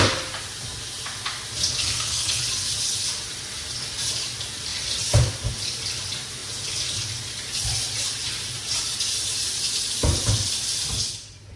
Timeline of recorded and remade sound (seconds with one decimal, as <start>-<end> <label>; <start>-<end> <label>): 0.0-1.8 recorded; 1.8-2.4 remade; 2.4-11.6 recorded